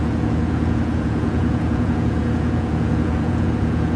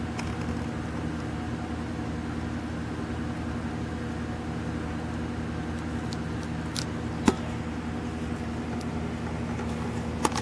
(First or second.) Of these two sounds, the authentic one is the second